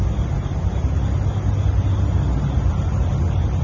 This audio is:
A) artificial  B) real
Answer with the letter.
B